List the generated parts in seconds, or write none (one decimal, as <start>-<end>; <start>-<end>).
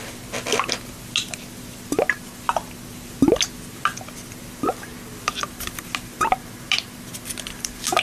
none